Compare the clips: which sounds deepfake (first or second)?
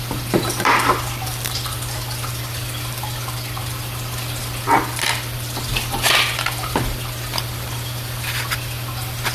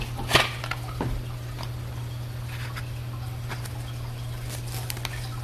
first